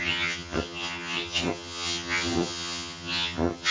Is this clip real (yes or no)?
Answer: no